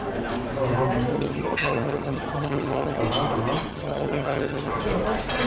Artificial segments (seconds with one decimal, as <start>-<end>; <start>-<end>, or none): 1.1-3.0; 3.7-4.7